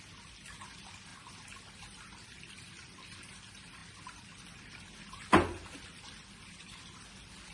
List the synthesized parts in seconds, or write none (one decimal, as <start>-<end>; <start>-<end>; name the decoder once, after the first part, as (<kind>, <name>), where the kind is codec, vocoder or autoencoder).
none